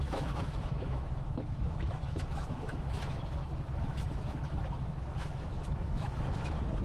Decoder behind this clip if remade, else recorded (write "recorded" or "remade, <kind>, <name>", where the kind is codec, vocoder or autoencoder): remade, autoencoder, DAC-VAE